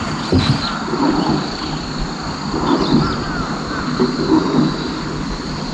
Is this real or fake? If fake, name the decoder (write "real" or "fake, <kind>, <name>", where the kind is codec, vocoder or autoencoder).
real